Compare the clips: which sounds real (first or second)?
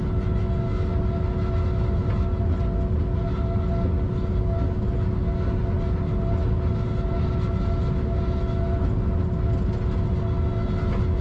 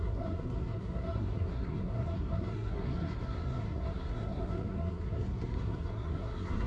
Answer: first